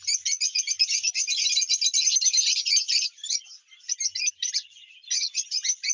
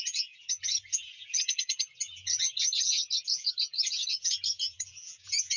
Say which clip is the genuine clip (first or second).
first